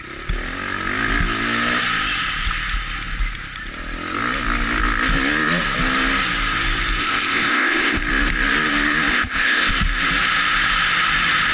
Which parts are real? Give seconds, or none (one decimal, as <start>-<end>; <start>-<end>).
0.0-7.0; 8.0-9.1; 9.7-11.5